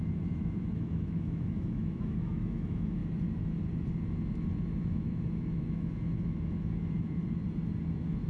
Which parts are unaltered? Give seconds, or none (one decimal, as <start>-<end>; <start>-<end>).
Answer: 3.0-4.8; 7.2-7.9